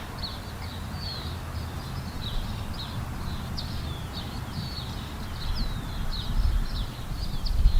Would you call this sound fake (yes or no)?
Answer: no